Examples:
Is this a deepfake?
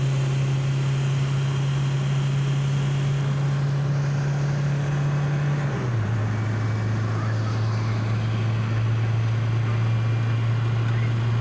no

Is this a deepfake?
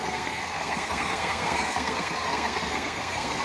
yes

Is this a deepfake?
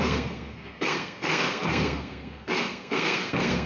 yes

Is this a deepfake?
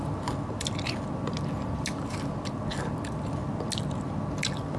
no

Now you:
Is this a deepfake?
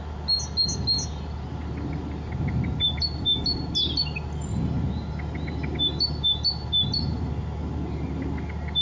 no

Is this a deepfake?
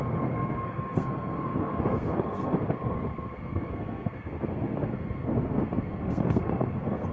yes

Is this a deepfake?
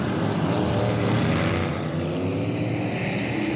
no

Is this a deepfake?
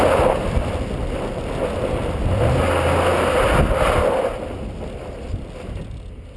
no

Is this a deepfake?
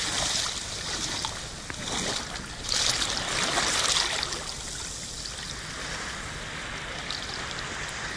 no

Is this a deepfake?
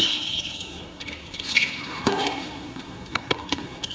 yes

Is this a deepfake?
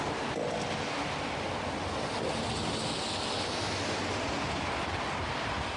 no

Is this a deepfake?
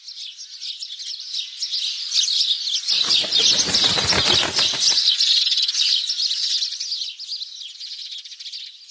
no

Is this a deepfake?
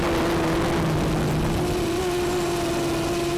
no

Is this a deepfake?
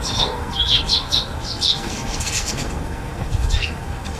yes